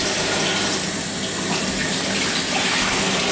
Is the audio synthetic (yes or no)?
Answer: no